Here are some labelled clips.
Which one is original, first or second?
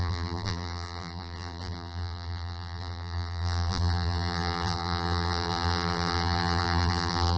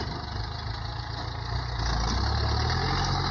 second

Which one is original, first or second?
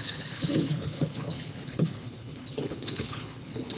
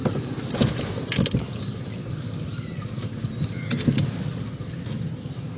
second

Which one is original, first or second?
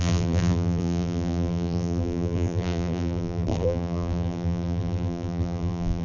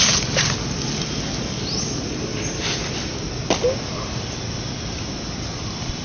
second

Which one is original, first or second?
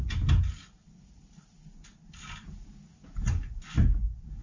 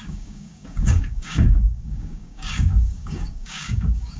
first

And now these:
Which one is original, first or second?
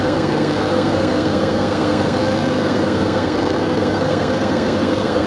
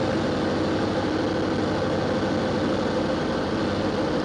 second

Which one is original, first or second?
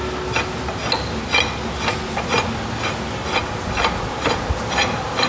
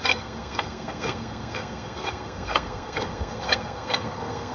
first